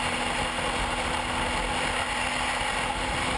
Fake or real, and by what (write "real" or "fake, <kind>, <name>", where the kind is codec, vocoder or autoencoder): real